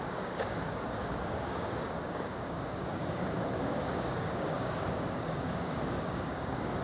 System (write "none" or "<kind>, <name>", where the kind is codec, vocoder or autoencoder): codec, DAC